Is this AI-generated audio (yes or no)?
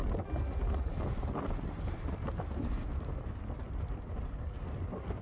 no